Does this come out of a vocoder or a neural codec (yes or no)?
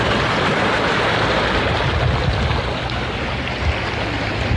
no